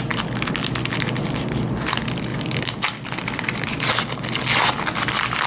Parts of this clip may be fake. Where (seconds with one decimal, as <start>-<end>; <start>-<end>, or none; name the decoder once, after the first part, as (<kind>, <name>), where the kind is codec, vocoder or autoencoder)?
2.3-3.9 (vocoder, BigVGAN v2)